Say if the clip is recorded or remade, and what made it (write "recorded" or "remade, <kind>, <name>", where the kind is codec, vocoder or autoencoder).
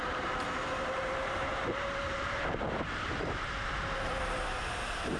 remade, vocoder, BigVGAN v2